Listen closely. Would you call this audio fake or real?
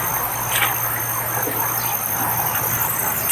real